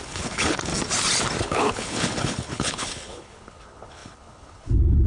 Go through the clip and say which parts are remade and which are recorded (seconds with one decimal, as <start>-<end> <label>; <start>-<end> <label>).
0.0-0.7 remade; 0.7-1.4 recorded; 1.4-5.1 remade